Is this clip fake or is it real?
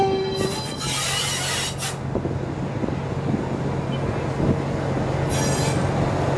real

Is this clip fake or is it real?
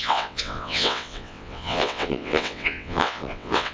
fake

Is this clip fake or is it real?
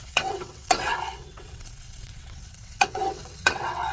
fake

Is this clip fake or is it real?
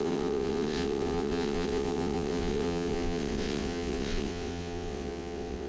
fake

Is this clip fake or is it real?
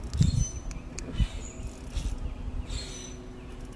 real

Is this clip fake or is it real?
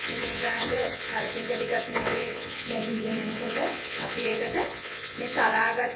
fake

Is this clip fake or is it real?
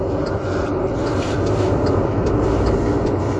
real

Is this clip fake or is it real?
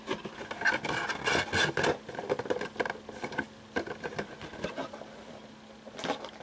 real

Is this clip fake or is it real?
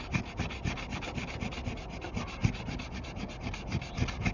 real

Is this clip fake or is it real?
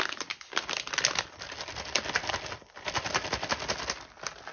real